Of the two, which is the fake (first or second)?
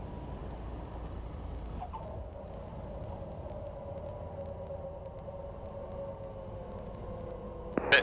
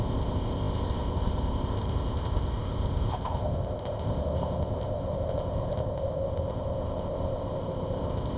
second